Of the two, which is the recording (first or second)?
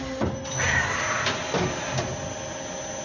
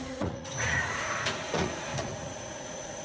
first